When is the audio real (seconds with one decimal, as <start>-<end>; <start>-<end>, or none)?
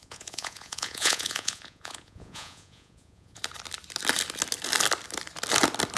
3.4-6.0